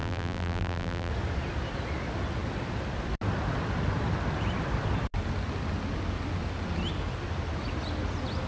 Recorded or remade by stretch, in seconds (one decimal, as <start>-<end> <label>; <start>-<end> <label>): 0.0-1.1 remade; 1.1-8.5 recorded

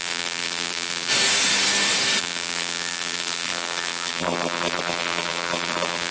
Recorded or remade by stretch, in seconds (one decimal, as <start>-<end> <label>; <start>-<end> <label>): 0.0-1.1 remade; 1.1-2.2 recorded; 2.2-6.1 remade

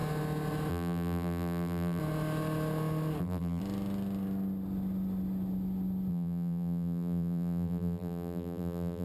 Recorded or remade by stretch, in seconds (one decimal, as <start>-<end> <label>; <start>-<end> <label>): 0.0-0.7 recorded; 0.7-2.0 remade; 2.0-3.2 recorded; 3.2-3.6 remade; 3.6-6.1 recorded; 6.1-9.0 remade

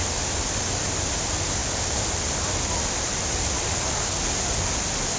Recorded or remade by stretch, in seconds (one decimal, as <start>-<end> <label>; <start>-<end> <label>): 0.0-5.2 recorded

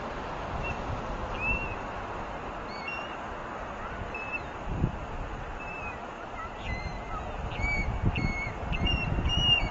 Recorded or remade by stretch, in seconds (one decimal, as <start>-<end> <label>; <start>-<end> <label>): 0.0-9.7 recorded